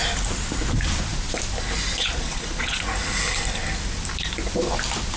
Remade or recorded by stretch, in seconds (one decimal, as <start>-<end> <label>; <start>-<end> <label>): 0.0-2.0 recorded; 2.0-2.8 remade; 2.8-5.2 recorded